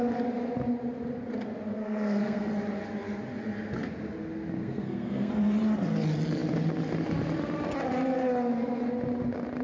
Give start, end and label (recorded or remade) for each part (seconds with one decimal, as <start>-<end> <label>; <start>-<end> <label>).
0.0-1.7 recorded; 1.7-2.5 remade; 2.5-4.6 recorded; 4.6-5.3 remade; 5.3-9.6 recorded